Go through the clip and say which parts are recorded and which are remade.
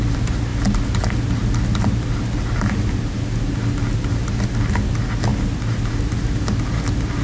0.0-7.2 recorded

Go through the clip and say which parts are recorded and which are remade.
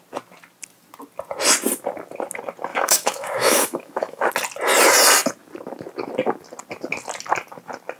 0.0-2.7 recorded; 2.7-4.3 remade; 4.3-8.0 recorded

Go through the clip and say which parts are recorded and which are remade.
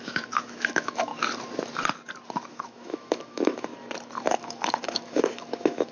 0.0-1.1 remade; 1.1-2.5 recorded; 2.5-3.7 remade; 3.7-4.3 recorded; 4.3-5.9 remade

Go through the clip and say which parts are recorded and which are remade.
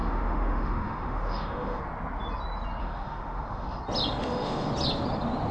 0.0-1.8 remade; 1.8-2.8 recorded; 2.8-3.8 remade; 3.8-4.2 recorded; 4.2-4.7 remade; 4.7-5.5 recorded